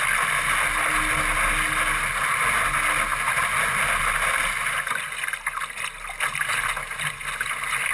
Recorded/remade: recorded